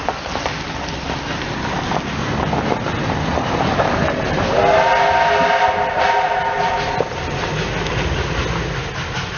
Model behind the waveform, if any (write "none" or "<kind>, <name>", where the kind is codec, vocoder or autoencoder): none